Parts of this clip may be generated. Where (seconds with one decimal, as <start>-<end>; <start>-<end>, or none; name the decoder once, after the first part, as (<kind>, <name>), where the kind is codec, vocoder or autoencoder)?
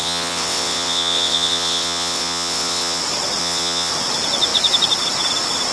0.0-3.0 (vocoder, WaveNeXt); 3.4-3.9